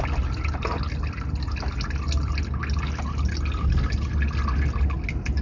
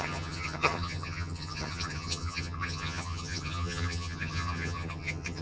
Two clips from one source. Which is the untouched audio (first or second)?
first